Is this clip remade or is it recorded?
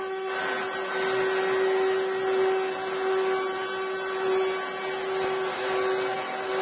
recorded